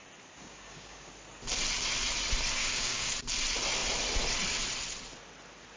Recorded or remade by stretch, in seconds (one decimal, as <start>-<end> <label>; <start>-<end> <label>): 0.0-0.4 recorded; 0.4-1.1 remade; 1.1-2.6 recorded; 2.6-3.1 remade; 3.1-5.8 recorded